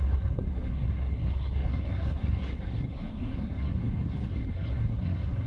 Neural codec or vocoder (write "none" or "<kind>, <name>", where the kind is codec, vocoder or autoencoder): codec, SNAC